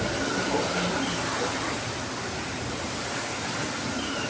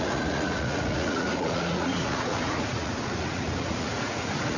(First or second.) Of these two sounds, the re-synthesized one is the second